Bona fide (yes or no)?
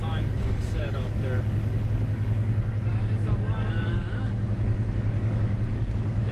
no